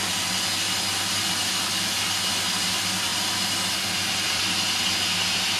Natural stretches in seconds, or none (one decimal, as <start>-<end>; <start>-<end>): 0.0-5.6